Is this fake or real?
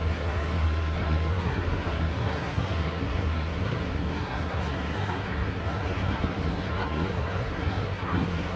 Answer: fake